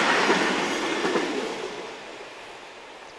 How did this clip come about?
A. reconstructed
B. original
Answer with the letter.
B